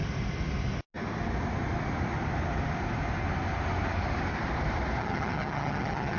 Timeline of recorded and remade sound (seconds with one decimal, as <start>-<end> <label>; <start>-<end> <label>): 0.0-5.0 recorded; 5.0-6.2 remade